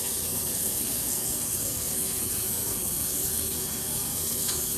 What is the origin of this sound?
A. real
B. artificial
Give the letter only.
B